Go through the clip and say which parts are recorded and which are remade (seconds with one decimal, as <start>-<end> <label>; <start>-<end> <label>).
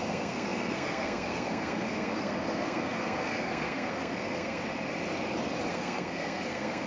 0.0-4.6 remade; 4.6-5.7 recorded; 5.7-6.9 remade